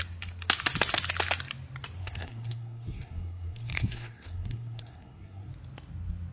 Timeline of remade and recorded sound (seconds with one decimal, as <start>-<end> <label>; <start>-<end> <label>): 0.0-2.0 recorded; 2.0-5.5 remade; 5.5-6.3 recorded